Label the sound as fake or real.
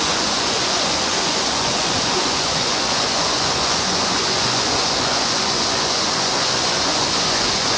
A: fake